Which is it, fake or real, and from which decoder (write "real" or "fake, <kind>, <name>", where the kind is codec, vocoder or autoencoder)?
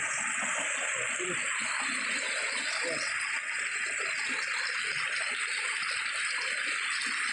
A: real